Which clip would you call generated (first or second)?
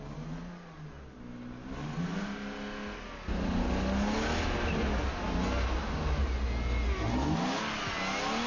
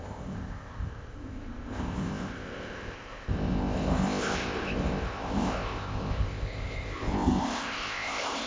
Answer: second